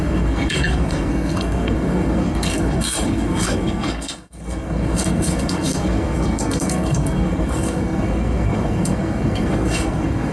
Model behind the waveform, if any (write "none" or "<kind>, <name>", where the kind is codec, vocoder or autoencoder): codec, SNAC